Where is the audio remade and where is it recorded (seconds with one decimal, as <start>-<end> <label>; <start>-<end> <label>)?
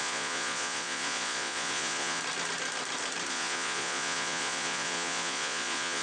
0.0-2.2 remade; 2.2-3.3 recorded; 3.3-6.0 remade